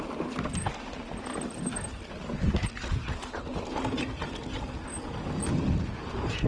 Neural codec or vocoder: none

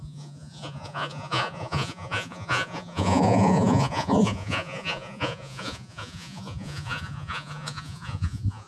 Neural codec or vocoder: vocoder, Vocos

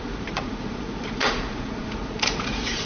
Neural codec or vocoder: vocoder, Vocos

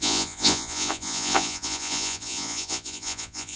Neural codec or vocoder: vocoder, Vocos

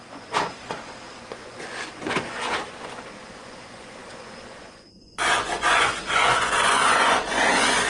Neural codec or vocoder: vocoder, Vocos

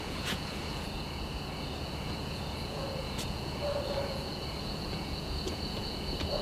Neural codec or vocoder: vocoder, Vocos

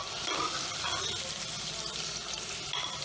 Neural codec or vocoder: none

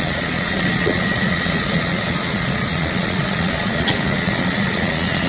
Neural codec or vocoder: vocoder, Vocos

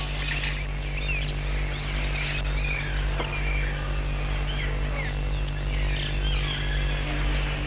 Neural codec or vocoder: none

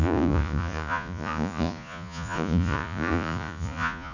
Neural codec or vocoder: vocoder, Vocos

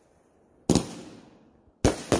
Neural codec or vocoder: none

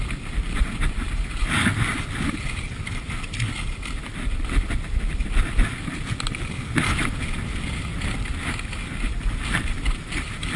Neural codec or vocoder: none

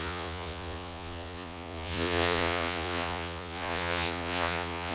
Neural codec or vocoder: vocoder, Vocos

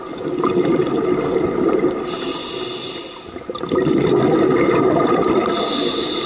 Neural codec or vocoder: none